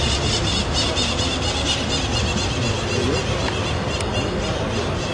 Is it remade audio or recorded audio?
recorded